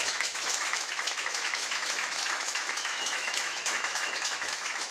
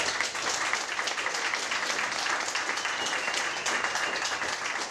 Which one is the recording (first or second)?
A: second